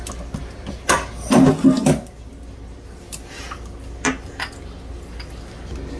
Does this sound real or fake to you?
real